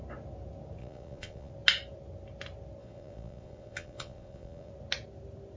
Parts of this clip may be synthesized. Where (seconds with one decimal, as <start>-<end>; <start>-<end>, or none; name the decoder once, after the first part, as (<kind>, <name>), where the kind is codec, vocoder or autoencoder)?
0.8-1.5 (vocoder, Vocos); 2.8-4.7